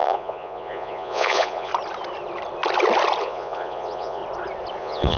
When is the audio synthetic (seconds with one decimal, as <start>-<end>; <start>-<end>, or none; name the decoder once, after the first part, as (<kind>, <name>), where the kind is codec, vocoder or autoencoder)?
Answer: 0.0-1.7 (vocoder, Vocos); 3.2-4.2; 4.8-5.2